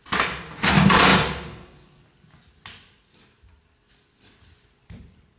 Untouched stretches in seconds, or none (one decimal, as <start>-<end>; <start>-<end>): 0.0-5.4